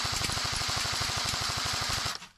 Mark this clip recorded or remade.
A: recorded